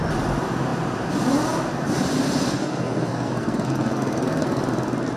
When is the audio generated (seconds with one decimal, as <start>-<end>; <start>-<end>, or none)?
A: 2.6-4.6